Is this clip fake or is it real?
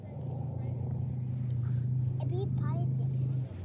real